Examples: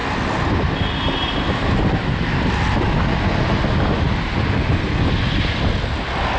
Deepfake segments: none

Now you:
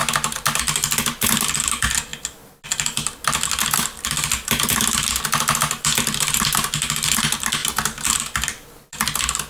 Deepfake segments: none

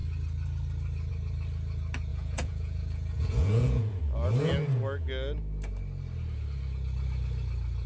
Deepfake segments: 2.1-4.0 (vocoder, Vocos)

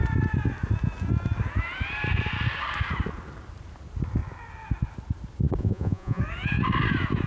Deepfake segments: 5.6-6.2 (vocoder, Vocos)

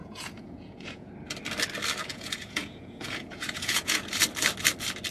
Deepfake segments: 0.0-1.1 (vocoder, Vocos); 2.1-4.2

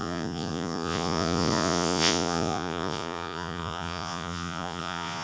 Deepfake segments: 0.0-5.2 (vocoder, Vocos)